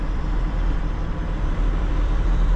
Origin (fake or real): fake